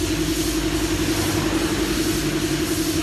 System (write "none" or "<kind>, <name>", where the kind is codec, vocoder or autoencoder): none